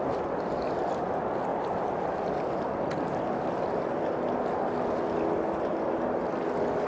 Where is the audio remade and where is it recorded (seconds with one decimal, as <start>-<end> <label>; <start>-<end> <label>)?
0.0-6.9 recorded